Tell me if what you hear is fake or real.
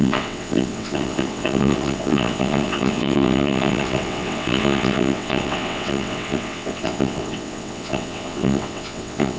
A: fake